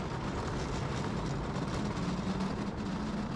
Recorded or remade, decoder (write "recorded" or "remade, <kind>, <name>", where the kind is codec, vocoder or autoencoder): recorded